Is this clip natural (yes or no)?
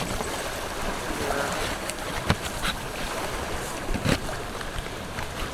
no